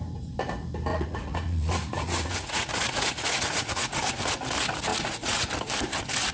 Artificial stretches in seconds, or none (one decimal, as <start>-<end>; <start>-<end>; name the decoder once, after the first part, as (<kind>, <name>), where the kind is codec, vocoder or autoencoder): 0.9-4.1 (vocoder, Vocos); 4.9-5.5